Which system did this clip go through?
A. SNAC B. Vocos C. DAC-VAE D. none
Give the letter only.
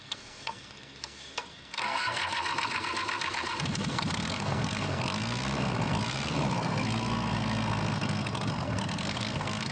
A